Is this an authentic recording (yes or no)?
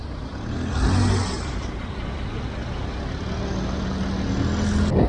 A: yes